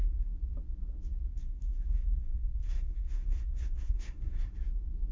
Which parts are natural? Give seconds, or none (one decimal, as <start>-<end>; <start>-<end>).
0.0-1.3; 4.4-5.1